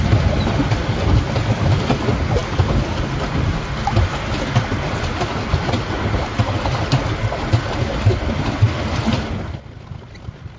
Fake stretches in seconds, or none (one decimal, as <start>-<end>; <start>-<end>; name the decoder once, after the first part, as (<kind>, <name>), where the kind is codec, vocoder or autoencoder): none